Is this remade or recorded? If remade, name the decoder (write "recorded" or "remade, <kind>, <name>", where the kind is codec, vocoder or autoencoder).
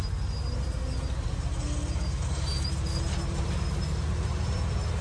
recorded